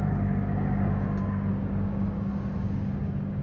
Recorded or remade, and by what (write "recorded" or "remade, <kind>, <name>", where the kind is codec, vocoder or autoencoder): remade, codec, DAC